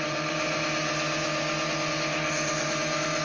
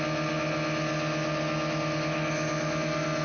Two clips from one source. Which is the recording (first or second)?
second